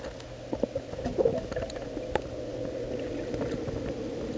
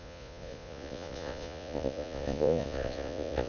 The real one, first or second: first